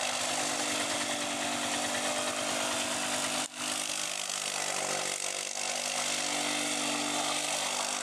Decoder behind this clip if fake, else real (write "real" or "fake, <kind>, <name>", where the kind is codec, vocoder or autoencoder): real